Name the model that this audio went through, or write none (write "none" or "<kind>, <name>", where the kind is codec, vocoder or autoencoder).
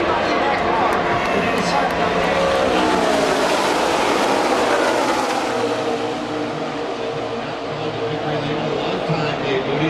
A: none